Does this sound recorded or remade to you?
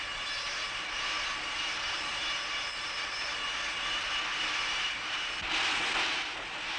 recorded